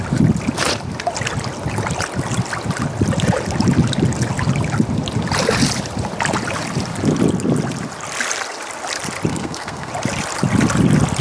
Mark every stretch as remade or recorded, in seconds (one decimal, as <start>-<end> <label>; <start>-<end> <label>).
0.0-9.3 recorded; 9.3-9.9 remade; 9.9-11.2 recorded